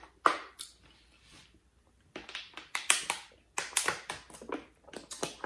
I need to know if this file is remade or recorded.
remade